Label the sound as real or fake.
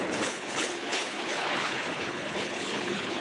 fake